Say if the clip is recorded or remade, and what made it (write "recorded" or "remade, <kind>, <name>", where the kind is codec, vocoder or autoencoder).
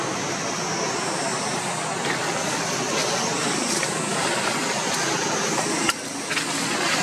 recorded